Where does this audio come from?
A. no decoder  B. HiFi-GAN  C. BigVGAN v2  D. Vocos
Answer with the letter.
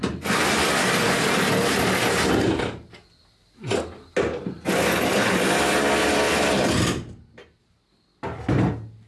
A